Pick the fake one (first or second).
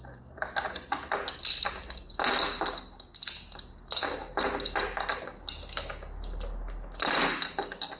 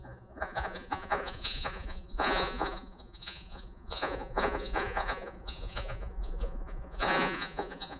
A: second